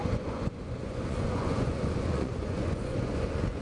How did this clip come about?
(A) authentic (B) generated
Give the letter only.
B